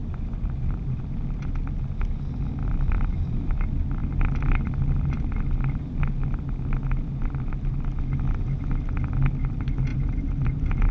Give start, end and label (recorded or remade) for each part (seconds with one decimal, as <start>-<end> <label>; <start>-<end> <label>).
0.0-1.0 remade; 1.0-2.6 recorded; 2.6-3.5 remade; 3.5-9.9 recorded; 9.9-10.9 remade

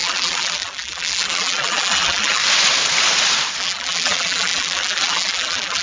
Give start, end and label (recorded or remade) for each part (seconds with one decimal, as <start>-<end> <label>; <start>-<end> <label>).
0.0-2.4 remade; 2.4-3.6 recorded; 3.6-5.8 remade

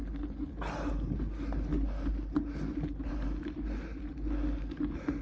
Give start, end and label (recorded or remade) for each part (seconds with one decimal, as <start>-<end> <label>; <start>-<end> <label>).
0.0-5.2 recorded

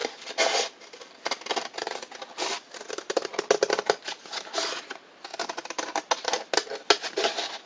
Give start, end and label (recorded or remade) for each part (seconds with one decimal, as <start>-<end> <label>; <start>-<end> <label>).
0.0-1.1 remade; 1.1-7.7 recorded

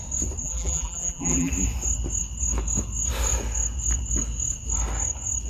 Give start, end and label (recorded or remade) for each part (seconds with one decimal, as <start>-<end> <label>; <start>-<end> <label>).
0.0-0.4 recorded; 0.4-1.5 remade; 1.5-5.5 recorded